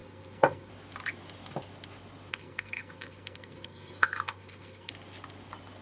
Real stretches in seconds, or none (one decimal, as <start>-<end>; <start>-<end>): 0.7-2.3; 4.9-5.8